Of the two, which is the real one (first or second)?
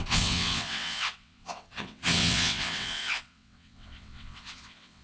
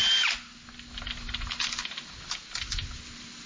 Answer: second